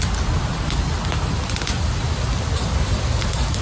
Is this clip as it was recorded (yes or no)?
yes